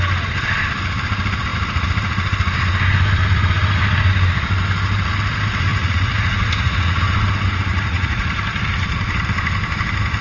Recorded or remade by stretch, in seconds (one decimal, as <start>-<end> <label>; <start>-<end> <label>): 0.0-5.7 recorded; 5.7-7.0 remade; 7.0-7.7 recorded; 7.7-8.4 remade; 8.4-10.2 recorded